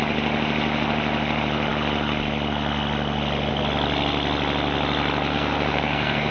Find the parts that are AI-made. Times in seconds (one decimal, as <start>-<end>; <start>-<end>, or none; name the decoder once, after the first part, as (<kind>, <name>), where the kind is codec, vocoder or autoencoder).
5.3-6.3 (codec, SNAC)